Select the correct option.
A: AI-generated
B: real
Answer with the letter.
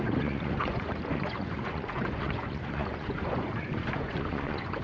A